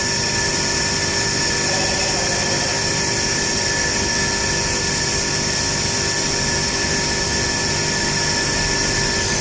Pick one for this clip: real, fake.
real